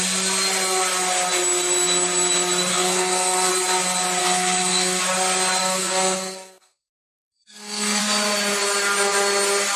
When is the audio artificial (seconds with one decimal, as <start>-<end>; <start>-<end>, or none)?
2.7-3.5; 4.2-5.0; 5.6-8.0